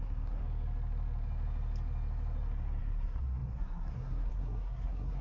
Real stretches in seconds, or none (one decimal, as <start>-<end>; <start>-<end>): 0.4-2.8